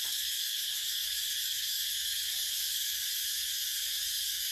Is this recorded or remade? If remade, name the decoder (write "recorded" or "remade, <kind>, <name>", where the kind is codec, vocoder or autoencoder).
remade, codec, DAC